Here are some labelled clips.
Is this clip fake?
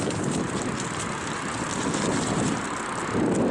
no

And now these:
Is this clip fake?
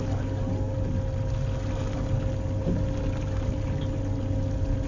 no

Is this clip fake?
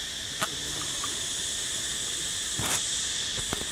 no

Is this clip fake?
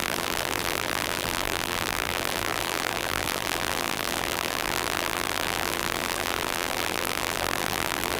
yes